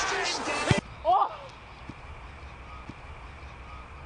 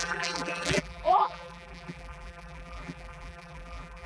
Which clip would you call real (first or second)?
first